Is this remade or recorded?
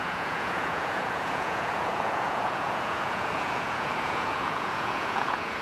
remade